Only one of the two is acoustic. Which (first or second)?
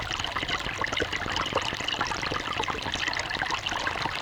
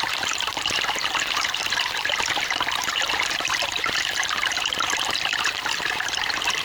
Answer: first